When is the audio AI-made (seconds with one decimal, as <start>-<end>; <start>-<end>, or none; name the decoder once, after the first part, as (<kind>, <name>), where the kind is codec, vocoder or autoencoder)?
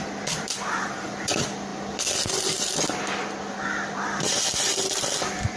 0.0-1.7 (vocoder, BigVGAN v2); 2.2-5.6